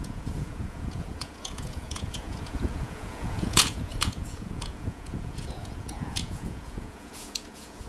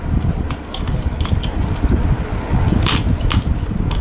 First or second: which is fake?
first